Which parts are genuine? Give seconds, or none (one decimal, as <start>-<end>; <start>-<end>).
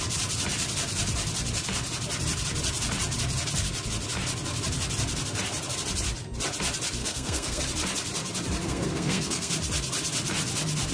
0.0-7.0; 7.6-8.6; 9.5-10.9